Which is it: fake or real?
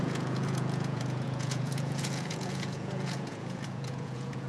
fake